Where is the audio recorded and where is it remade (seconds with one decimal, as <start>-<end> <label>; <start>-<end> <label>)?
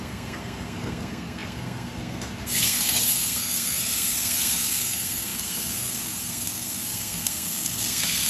0.0-8.3 remade